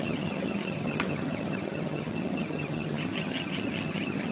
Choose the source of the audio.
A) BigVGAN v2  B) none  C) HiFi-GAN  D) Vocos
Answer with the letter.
C